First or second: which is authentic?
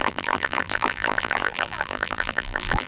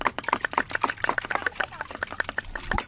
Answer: second